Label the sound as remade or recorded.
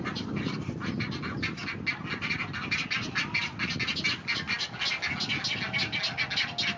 recorded